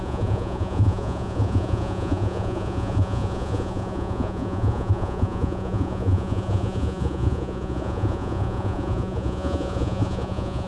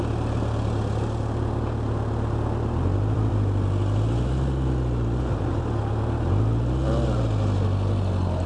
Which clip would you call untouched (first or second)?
second